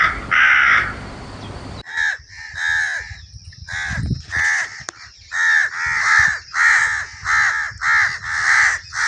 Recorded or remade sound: recorded